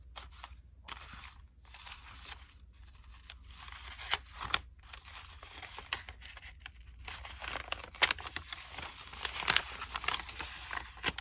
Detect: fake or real real